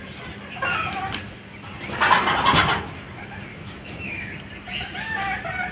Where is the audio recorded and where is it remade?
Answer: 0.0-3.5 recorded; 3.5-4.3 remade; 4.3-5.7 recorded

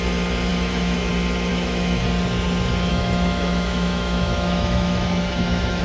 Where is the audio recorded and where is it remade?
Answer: 0.0-0.5 recorded; 0.5-1.1 remade; 1.1-1.5 recorded; 1.5-2.0 remade; 2.0-2.9 recorded; 2.9-5.8 remade

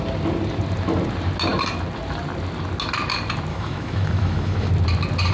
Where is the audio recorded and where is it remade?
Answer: 0.0-3.5 recorded; 3.5-4.7 remade; 4.7-5.3 recorded